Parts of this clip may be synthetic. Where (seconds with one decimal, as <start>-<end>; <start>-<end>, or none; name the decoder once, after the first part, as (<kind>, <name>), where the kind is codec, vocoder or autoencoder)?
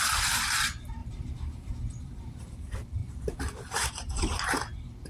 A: 1.0-1.7 (vocoder, BigVGAN v2); 3.0-4.3